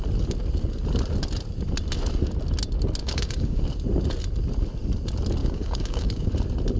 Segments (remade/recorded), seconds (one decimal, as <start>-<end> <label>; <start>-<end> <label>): 0.0-3.0 recorded; 3.0-3.6 remade; 3.6-5.4 recorded; 5.4-6.3 remade; 6.3-6.8 recorded